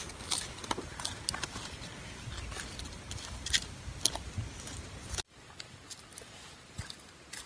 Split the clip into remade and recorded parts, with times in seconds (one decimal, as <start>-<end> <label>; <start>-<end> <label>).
0.0-7.5 recorded